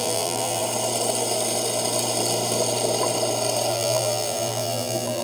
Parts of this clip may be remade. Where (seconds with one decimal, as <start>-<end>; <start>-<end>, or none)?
0.0-0.6; 3.7-5.2